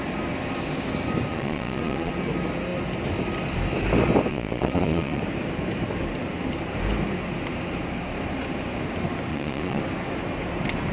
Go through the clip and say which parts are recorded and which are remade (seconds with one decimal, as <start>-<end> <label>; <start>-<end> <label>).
0.0-1.3 recorded; 1.3-2.1 remade; 2.1-4.3 recorded; 4.3-5.2 remade; 5.2-9.3 recorded; 9.3-9.8 remade; 9.8-10.9 recorded